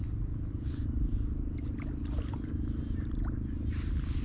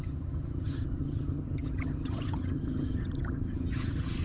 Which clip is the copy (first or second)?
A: second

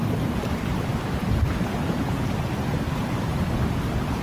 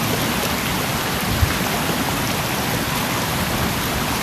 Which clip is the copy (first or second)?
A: first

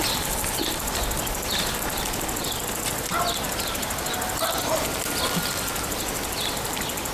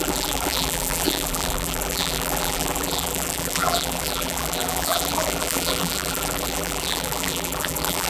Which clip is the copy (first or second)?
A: second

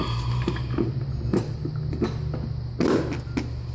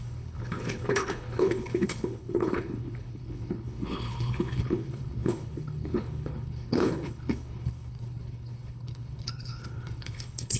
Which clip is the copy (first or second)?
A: second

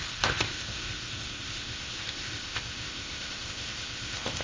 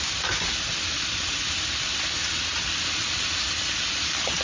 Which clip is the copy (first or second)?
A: first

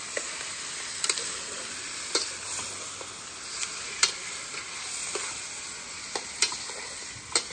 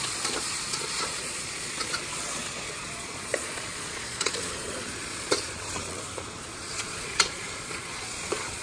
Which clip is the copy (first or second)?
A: second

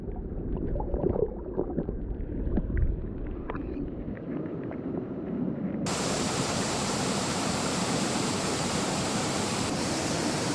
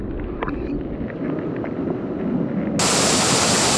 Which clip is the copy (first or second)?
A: first